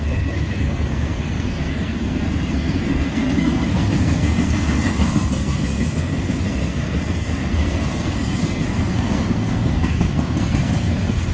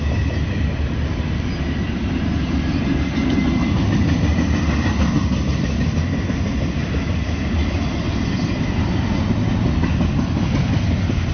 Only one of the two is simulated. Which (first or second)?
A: first